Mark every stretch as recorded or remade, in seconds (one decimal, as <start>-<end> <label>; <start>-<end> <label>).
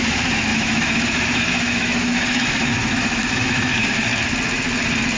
0.0-4.1 remade; 4.1-5.2 recorded